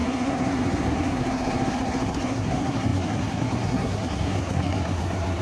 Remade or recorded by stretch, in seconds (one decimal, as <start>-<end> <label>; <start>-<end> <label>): 0.0-5.4 remade